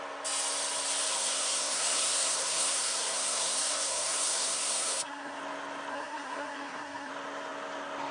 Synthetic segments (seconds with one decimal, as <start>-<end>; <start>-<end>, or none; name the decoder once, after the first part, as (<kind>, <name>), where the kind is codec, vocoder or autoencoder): 1.1-5.4 (codec, SNAC); 5.9-7.1